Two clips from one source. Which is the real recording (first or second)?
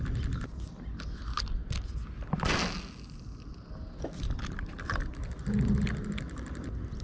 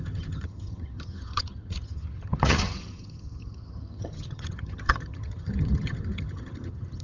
first